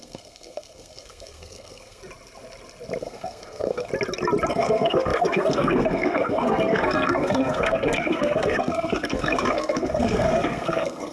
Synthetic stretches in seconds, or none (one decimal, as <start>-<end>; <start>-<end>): 0.0-2.0; 3.0-3.9; 4.5-11.1